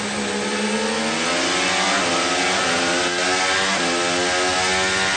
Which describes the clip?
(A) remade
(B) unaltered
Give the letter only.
B